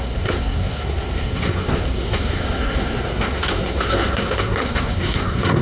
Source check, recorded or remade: remade